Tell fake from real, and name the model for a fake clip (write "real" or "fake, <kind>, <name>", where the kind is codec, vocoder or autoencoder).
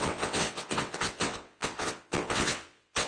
fake, vocoder, WaveNeXt